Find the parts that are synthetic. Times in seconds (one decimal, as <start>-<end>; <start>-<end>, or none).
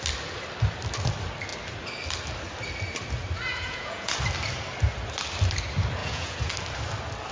3.5-4.2; 6.0-6.5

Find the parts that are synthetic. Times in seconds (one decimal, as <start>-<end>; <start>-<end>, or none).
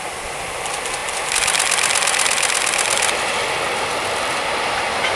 none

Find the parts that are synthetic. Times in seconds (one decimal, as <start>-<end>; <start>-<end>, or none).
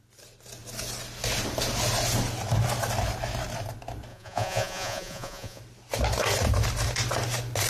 4.1-5.6